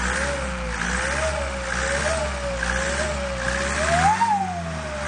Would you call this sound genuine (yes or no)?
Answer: yes